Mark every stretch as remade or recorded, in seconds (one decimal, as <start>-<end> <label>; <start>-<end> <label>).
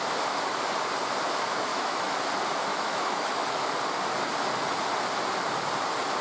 0.0-1.7 recorded; 1.7-2.2 remade; 2.2-2.7 recorded; 2.7-3.7 remade; 3.7-6.2 recorded